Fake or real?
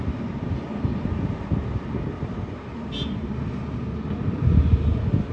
real